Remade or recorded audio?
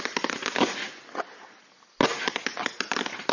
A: recorded